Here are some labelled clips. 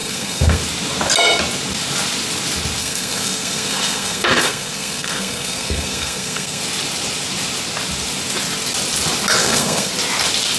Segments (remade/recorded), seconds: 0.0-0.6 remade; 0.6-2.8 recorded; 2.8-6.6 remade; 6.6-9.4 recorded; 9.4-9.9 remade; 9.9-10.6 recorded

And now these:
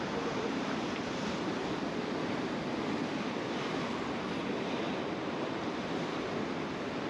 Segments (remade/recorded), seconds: 0.0-7.1 recorded

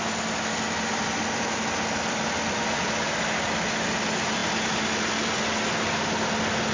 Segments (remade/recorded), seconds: 0.0-6.7 recorded

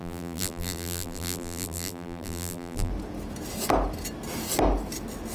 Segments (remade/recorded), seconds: 0.0-2.9 remade; 2.9-5.3 recorded

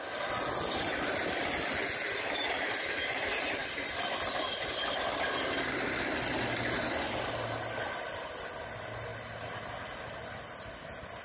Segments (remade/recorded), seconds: 0.0-11.2 recorded

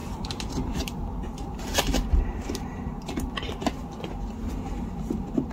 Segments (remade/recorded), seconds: 0.0-3.3 remade; 3.3-5.5 recorded

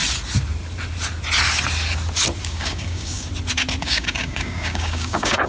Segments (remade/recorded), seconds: 0.0-2.5 recorded; 2.5-3.3 remade; 3.3-3.8 recorded; 3.8-5.5 remade

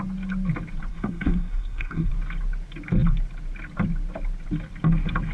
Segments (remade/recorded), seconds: 0.0-0.9 recorded; 0.9-2.1 remade; 2.1-5.3 recorded